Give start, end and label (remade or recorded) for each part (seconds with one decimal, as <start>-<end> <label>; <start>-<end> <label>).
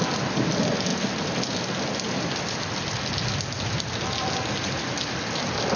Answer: 0.0-5.8 recorded